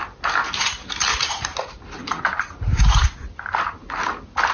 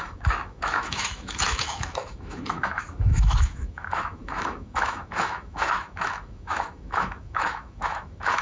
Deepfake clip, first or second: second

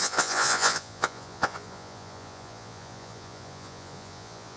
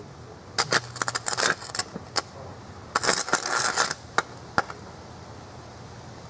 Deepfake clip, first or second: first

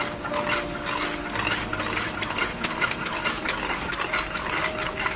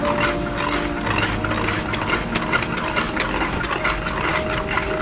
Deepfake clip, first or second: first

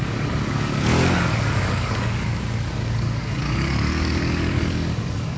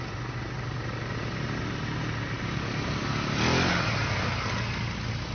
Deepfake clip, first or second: first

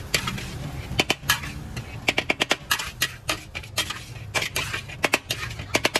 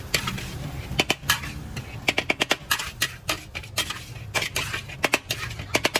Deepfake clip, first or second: second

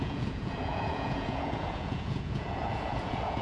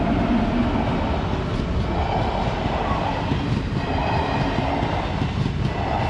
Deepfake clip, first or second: first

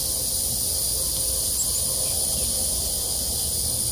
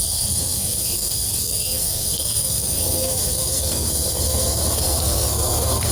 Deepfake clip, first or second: second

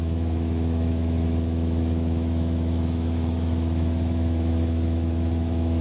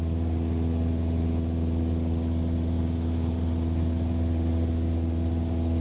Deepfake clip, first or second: first